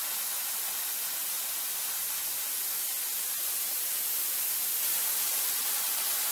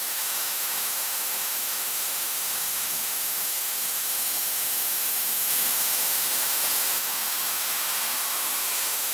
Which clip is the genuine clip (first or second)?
first